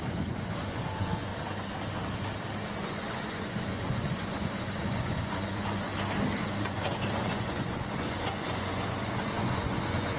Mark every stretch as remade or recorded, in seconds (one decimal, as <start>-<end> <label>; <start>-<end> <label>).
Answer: 0.0-1.3 remade; 1.3-2.8 recorded; 2.8-5.9 remade; 5.9-6.4 recorded; 6.4-10.2 remade